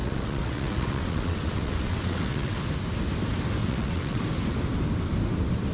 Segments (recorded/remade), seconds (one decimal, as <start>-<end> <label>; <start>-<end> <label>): 0.0-2.6 remade; 2.6-3.6 recorded; 3.6-4.2 remade; 4.2-5.7 recorded